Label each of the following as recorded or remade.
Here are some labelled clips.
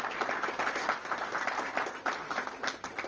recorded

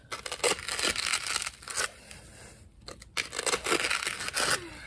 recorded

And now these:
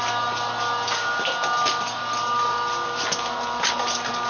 recorded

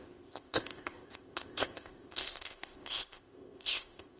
remade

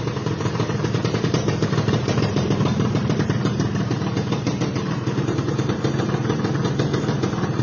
remade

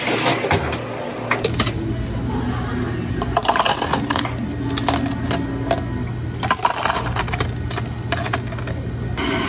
recorded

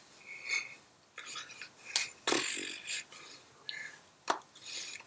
recorded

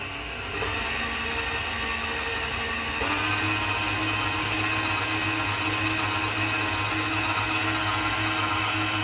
recorded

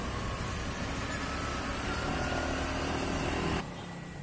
recorded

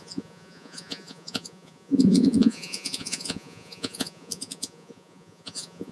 remade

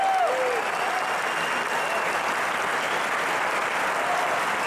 recorded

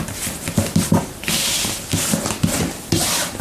recorded